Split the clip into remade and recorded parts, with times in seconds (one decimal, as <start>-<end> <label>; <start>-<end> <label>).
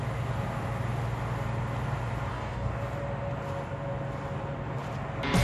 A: 0.0-2.3 recorded; 2.3-2.8 remade; 2.8-5.4 recorded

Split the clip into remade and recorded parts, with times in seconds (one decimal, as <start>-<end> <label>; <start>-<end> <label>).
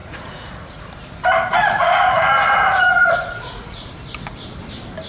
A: 0.0-0.8 remade; 0.8-1.5 recorded; 1.5-3.9 remade; 3.9-5.1 recorded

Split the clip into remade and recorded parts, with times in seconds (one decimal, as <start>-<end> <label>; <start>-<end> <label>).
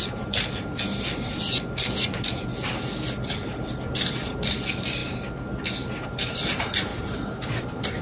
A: 0.0-8.0 recorded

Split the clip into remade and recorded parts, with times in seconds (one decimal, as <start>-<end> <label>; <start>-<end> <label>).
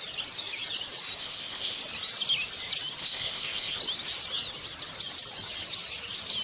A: 0.0-1.2 recorded; 1.2-1.8 remade; 1.8-3.0 recorded; 3.0-3.8 remade; 3.8-6.4 recorded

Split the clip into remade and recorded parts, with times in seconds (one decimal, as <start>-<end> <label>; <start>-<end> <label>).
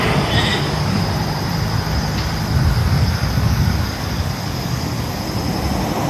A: 0.0-0.5 recorded; 0.5-1.0 remade; 1.0-2.8 recorded; 2.8-5.2 remade; 5.2-6.1 recorded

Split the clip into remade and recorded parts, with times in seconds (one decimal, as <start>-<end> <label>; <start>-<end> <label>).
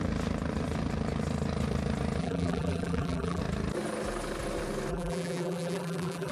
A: 0.0-2.2 recorded; 2.2-3.4 remade; 3.4-4.9 recorded; 4.9-6.3 remade